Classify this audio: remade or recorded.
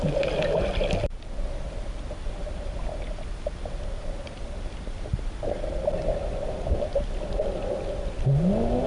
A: recorded